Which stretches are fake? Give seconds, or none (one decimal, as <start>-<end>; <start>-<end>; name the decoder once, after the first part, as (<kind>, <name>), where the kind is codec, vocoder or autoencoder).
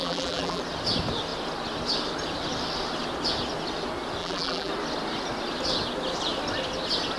0.0-0.6 (vocoder, BigVGAN v2); 4.2-4.7